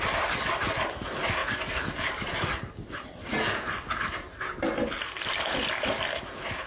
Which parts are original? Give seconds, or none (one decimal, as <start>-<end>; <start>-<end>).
0.0-6.7